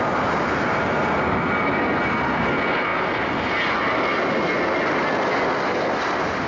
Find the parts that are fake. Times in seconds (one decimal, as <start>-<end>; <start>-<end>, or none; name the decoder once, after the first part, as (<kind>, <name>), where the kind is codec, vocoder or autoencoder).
none